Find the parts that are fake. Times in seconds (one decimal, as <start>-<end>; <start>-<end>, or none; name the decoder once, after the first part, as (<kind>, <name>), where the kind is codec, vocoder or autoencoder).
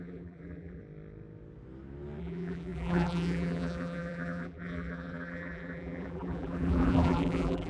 0.0-0.8 (vocoder, BigVGAN v2); 2.2-7.7